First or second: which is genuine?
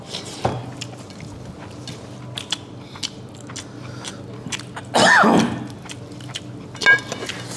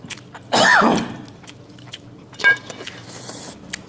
first